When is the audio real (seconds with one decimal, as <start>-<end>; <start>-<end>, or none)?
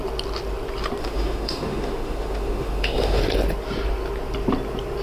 0.0-1.0; 3.2-5.0